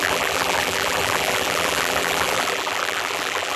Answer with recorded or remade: remade